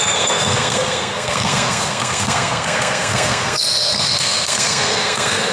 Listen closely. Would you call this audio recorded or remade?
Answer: remade